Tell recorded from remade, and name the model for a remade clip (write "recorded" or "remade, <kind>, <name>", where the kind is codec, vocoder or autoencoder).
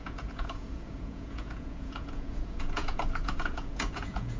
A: remade, vocoder, Vocos